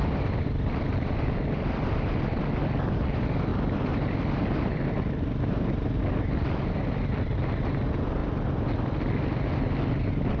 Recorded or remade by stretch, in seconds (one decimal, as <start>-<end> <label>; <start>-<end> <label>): 0.0-2.0 remade; 2.0-10.4 recorded